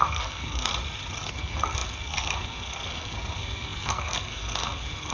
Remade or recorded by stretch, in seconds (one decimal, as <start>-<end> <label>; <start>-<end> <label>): 0.0-0.7 remade; 0.7-1.3 recorded; 1.3-5.1 remade